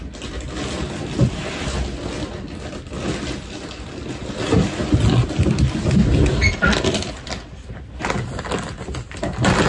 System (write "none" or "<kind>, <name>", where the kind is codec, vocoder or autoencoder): none